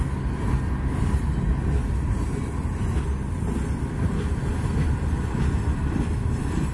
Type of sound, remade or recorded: recorded